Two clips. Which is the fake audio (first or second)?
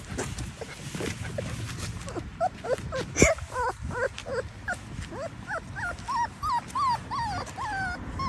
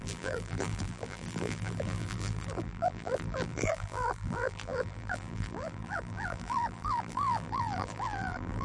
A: second